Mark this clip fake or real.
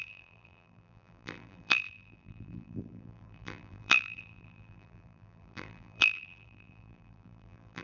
fake